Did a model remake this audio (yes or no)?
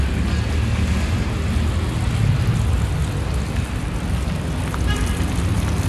no